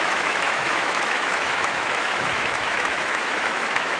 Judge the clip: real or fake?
fake